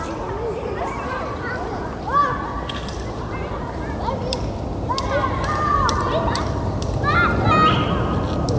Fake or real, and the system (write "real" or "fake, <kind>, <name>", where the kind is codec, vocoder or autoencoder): real